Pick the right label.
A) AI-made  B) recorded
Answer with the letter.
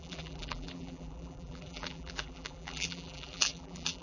A